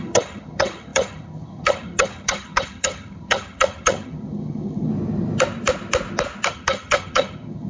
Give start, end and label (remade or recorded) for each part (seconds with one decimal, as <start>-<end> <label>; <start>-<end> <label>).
0.0-4.9 remade; 4.9-6.5 recorded; 6.5-7.7 remade

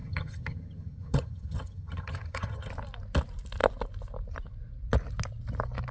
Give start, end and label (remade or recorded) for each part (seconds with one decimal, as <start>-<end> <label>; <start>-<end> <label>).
0.0-2.7 remade; 2.7-5.9 recorded

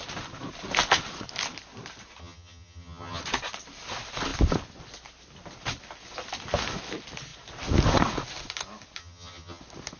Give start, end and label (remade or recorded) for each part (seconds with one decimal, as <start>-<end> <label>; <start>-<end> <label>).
0.0-2.2 recorded; 2.2-3.2 remade; 3.2-9.0 recorded; 9.0-9.6 remade; 9.6-10.0 recorded

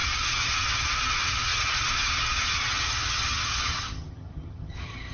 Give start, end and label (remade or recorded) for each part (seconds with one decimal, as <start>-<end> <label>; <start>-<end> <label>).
0.0-5.1 remade

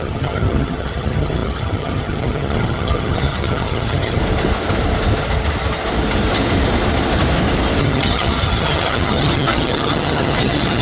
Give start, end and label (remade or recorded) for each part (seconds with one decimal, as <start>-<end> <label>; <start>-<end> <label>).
0.0-4.2 remade; 4.2-7.8 recorded; 7.8-10.8 remade